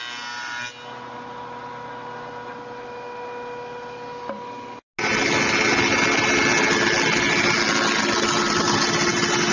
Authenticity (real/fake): real